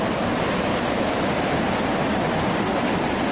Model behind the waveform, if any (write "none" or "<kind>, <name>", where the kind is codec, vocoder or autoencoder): none